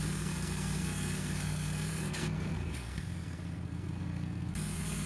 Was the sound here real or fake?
fake